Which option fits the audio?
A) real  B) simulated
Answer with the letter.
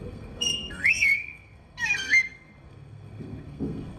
B